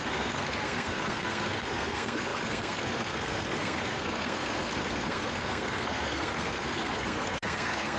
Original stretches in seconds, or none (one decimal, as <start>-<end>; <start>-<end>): none